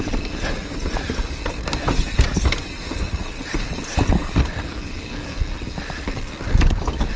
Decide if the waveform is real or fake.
real